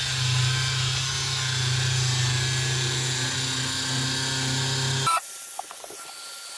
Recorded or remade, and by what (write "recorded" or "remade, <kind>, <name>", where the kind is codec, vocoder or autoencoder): recorded